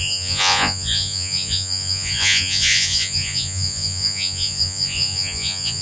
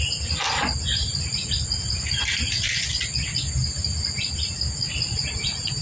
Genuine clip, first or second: second